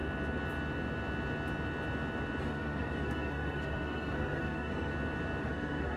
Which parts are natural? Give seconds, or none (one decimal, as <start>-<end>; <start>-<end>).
0.0-2.4; 4.9-5.4